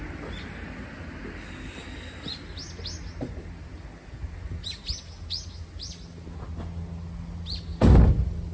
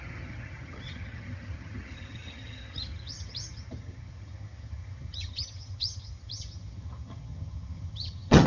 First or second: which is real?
first